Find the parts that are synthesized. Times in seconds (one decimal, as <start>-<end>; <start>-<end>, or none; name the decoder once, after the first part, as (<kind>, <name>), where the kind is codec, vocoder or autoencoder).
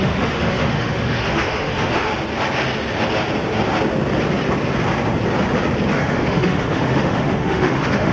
0.0-2.1 (autoencoder, DAC-VAE); 5.9-8.1